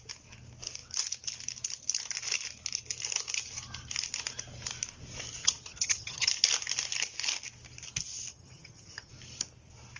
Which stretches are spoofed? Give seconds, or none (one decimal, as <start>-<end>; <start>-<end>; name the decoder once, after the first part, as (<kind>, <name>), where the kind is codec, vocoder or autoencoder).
5.4-6.3 (vocoder, HiFi-GAN); 8.3-9.1